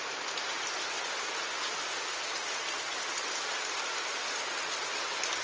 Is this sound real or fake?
real